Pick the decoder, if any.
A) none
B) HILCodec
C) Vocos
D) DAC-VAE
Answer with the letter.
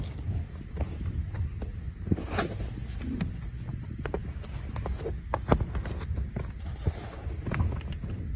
A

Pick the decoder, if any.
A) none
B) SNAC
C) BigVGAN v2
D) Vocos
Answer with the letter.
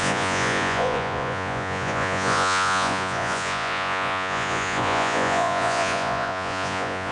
D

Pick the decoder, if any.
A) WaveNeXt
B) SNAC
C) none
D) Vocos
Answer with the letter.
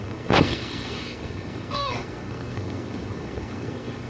B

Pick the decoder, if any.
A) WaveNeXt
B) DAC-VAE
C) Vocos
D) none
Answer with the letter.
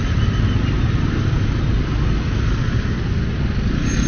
D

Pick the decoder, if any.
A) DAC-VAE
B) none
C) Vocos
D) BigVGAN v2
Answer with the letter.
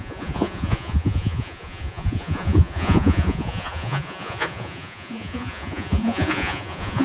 C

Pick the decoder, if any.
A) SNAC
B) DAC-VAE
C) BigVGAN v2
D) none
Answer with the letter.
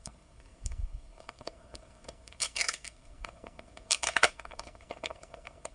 A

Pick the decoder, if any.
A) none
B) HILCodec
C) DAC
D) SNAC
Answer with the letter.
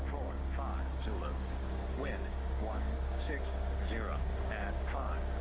C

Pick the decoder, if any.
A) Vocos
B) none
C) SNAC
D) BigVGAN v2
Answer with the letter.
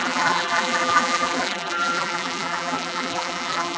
D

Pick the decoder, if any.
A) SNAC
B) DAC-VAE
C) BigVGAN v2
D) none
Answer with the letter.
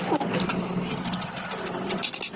D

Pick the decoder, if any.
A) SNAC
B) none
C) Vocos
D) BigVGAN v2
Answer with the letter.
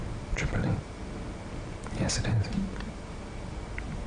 D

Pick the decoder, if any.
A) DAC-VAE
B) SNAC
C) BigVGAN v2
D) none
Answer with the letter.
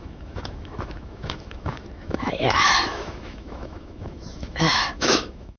A